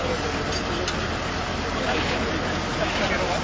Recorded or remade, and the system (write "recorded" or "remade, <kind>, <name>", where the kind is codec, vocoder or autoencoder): recorded